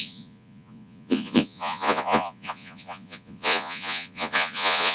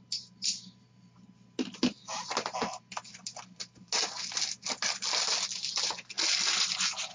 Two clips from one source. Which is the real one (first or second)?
second